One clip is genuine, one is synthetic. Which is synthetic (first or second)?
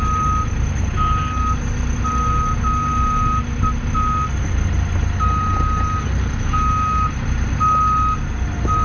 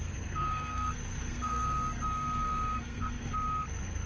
second